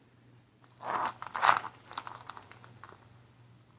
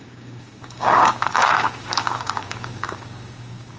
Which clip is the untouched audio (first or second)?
first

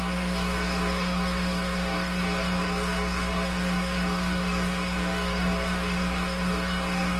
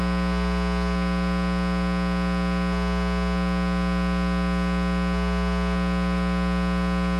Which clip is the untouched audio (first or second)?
second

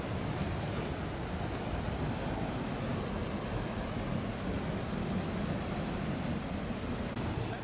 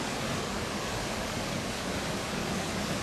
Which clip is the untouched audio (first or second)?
first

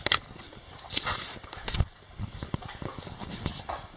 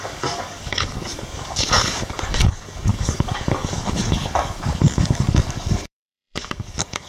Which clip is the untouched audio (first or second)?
first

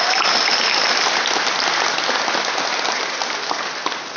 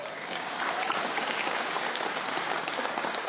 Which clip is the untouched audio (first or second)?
first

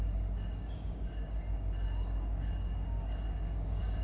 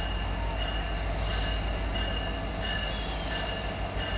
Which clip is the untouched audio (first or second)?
second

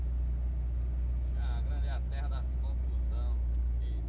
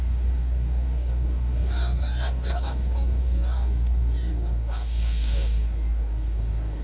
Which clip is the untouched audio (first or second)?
first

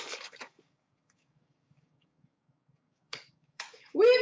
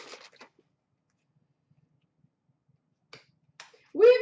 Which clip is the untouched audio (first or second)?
second